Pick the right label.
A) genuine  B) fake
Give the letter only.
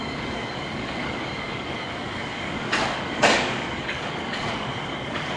B